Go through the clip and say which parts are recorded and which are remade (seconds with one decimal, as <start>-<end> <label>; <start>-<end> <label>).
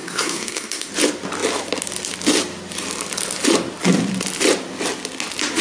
0.0-0.9 remade; 0.9-5.6 recorded